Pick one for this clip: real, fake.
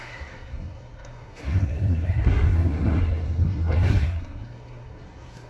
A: fake